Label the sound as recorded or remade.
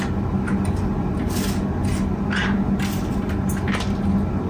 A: recorded